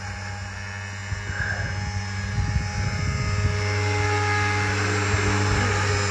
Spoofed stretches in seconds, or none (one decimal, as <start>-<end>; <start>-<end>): none